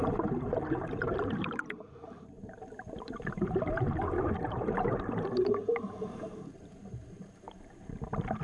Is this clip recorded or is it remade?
remade